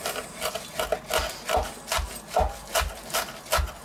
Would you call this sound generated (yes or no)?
no